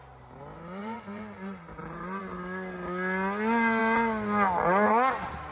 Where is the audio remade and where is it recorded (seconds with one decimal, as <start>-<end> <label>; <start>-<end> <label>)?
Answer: 0.0-0.8 recorded; 0.8-2.2 remade; 2.2-5.5 recorded